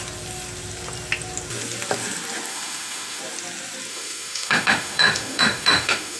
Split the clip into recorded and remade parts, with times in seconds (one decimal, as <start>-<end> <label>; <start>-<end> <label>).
0.0-2.5 recorded; 2.5-3.2 remade; 3.2-3.9 recorded; 3.9-6.2 remade

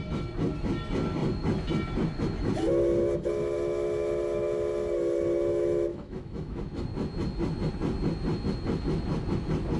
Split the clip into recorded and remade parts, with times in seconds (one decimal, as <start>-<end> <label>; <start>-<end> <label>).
0.0-5.9 recorded; 5.9-6.6 remade; 6.6-9.8 recorded

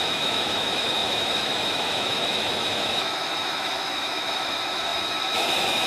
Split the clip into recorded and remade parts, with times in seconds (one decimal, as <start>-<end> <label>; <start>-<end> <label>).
0.0-5.9 remade

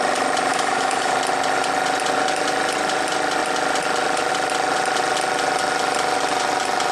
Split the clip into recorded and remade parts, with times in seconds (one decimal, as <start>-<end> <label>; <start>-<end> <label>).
0.0-0.5 recorded; 0.5-1.1 remade; 1.1-6.9 recorded

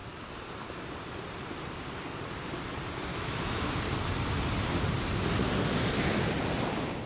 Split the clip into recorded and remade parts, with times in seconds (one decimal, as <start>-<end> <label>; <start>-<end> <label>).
0.0-3.1 recorded; 3.1-3.7 remade; 3.7-7.1 recorded

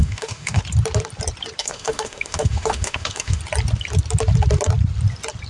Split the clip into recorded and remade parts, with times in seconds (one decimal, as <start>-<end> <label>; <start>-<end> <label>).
0.0-0.6 remade; 0.6-1.6 recorded; 1.6-3.4 remade; 3.4-5.5 recorded

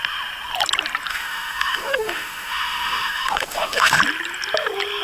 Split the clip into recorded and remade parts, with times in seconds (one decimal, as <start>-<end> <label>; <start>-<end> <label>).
0.0-1.1 recorded; 1.1-4.0 remade; 4.0-5.0 recorded

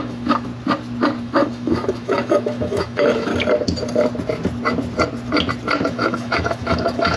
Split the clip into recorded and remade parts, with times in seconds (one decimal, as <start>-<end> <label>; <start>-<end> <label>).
0.0-0.5 remade; 0.5-1.2 recorded; 1.2-3.3 remade; 3.3-5.9 recorded; 5.9-7.2 remade